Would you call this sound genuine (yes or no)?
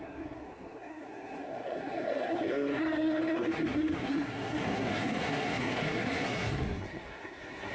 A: no